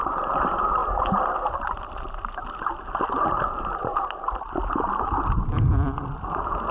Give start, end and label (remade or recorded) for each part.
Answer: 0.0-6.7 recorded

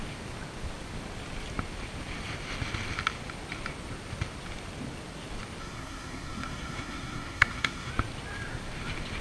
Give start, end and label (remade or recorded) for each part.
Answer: 0.0-5.6 recorded; 5.6-7.9 remade; 7.9-9.2 recorded

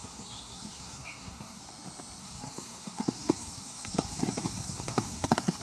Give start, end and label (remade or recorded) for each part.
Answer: 0.0-1.6 remade; 1.6-2.2 recorded; 2.2-5.6 remade

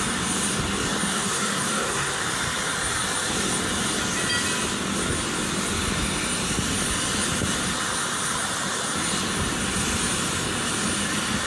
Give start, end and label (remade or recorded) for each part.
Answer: 0.0-1.1 recorded; 1.1-2.2 remade; 2.2-11.5 recorded

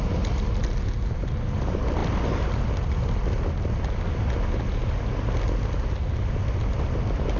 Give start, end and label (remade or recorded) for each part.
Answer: 0.0-7.4 recorded

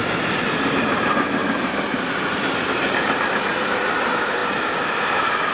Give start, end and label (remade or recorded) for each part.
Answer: 0.0-5.5 recorded

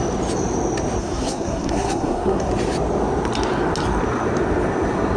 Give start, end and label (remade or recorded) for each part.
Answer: 0.0-1.0 recorded; 1.0-2.5 remade; 2.5-5.2 recorded

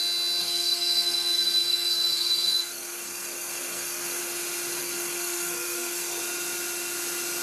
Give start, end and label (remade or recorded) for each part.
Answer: 0.0-0.4 recorded; 0.4-4.2 remade; 4.2-4.8 recorded; 4.8-6.2 remade; 6.2-7.4 recorded